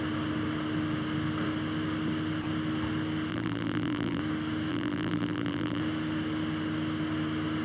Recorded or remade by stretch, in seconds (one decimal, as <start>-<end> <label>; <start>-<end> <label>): 0.0-3.3 recorded; 3.3-4.2 remade; 4.2-4.7 recorded; 4.7-5.8 remade; 5.8-7.6 recorded